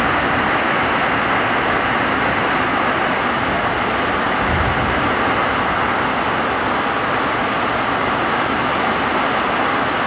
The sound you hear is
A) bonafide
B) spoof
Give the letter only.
A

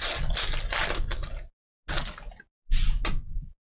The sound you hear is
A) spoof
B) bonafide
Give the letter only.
B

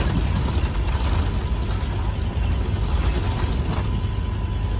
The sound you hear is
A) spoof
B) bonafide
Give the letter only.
B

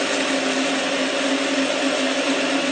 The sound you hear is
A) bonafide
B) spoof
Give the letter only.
A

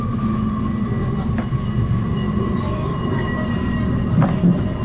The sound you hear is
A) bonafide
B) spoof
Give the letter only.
A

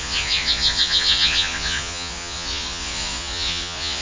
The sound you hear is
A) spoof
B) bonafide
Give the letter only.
A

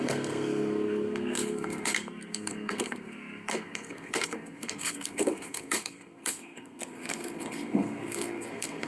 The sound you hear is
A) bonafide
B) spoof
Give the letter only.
B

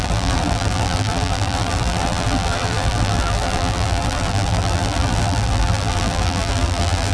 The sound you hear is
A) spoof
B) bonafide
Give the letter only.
A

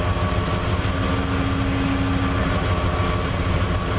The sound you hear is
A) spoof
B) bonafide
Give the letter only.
B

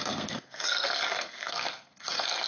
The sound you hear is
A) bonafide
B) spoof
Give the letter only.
B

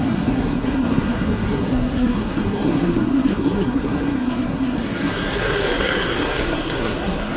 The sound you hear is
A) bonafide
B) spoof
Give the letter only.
B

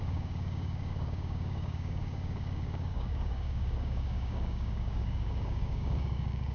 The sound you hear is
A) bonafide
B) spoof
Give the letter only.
B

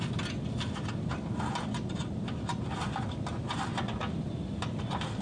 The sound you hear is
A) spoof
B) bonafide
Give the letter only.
B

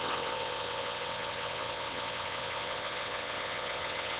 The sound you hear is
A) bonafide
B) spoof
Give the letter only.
B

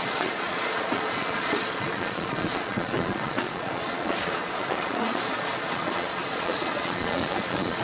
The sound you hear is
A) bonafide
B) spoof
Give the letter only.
B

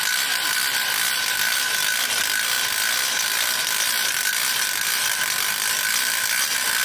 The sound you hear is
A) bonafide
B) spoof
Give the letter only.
A